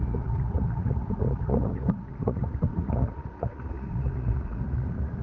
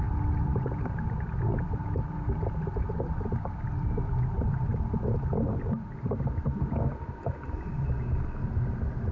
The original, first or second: second